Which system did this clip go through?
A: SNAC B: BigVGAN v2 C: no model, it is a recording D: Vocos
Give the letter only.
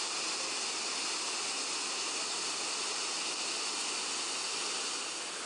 C